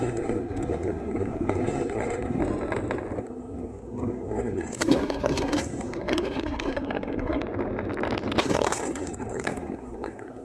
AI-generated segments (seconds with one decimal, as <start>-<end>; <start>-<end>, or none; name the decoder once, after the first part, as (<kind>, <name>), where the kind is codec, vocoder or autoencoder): 0.0-2.4 (codec, SNAC); 3.2-7.4; 8.4-10.4